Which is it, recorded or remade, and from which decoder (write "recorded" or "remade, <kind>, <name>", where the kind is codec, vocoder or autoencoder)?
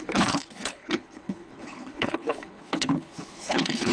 remade, codec, HILCodec